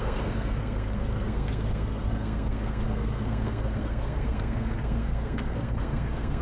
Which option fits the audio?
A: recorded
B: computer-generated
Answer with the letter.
B